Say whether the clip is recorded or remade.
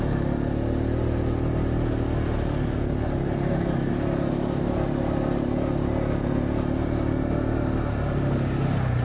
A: recorded